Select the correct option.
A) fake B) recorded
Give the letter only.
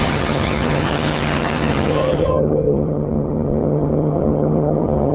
A